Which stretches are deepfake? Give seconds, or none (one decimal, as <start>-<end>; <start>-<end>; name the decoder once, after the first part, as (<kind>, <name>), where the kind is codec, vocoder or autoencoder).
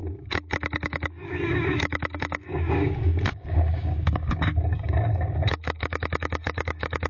0.0-7.1 (codec, DAC)